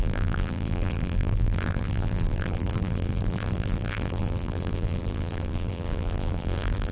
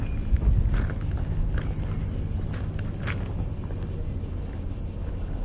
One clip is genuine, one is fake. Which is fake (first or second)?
first